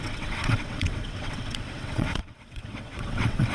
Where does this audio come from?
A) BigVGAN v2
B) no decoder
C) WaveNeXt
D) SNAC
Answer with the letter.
C